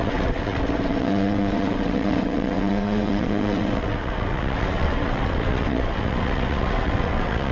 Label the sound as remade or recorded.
remade